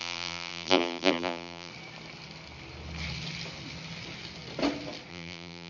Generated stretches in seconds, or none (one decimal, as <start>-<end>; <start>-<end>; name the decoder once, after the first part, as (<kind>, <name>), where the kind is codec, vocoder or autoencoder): 0.0-1.7 (vocoder, BigVGAN v2); 5.1-5.7